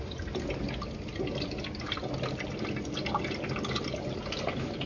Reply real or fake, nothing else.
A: real